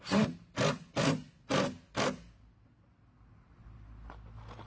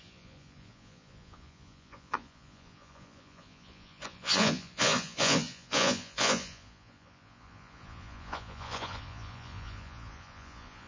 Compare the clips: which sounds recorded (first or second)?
first